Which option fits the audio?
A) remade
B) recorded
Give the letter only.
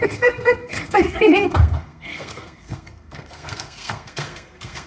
A